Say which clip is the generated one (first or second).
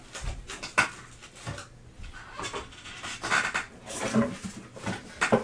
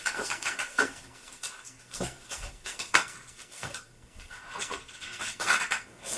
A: second